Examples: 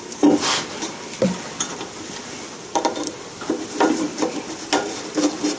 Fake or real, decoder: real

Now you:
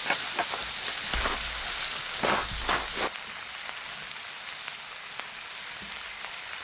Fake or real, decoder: real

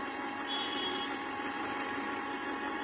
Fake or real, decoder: real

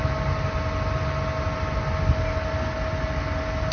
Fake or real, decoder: real